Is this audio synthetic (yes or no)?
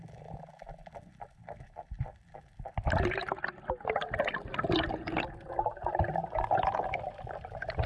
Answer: no